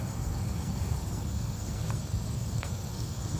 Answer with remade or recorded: remade